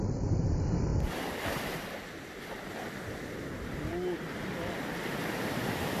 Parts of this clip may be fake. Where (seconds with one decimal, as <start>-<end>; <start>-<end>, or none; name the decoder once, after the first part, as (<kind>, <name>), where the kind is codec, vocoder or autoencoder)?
0.0-0.9 (vocoder, BigVGAN v2); 3.4-3.9; 5.5-6.0